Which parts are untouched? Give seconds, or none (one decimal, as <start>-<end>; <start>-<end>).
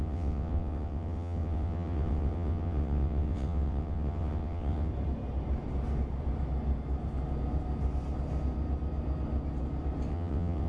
4.9-10.1